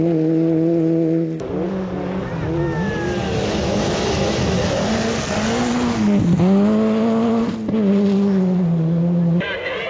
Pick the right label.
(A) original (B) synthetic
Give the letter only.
A